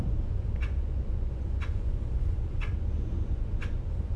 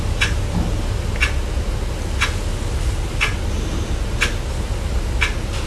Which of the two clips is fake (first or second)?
first